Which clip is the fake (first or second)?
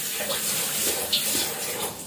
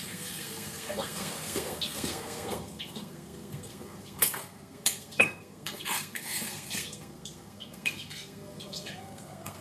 second